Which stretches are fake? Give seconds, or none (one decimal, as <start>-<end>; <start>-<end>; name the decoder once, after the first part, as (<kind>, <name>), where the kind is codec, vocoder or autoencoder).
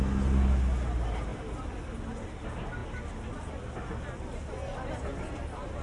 none